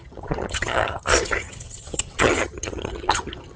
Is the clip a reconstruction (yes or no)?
yes